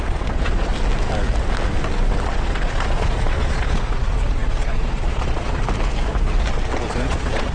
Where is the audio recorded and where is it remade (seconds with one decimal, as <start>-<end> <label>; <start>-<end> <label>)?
0.0-0.7 remade; 0.7-2.3 recorded; 2.3-5.6 remade; 5.6-6.9 recorded; 6.9-7.5 remade